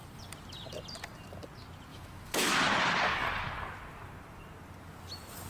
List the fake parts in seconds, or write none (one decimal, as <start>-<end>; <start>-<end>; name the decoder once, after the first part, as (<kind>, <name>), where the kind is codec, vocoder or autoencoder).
1.9-2.5 (autoencoder, DAC-VAE)